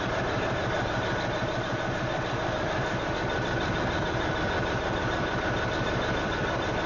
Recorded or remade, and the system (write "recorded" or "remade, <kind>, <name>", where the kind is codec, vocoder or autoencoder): remade, vocoder, BigVGAN v2